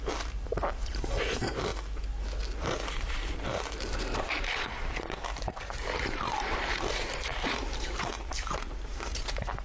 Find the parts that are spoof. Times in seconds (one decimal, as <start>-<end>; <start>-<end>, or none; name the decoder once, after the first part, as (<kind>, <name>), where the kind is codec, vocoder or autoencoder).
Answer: 0.0-1.7 (vocoder, BigVGAN v2); 2.6-9.6